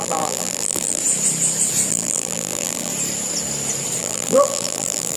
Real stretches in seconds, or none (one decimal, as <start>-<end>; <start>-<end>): 1.0-1.9; 2.9-4.0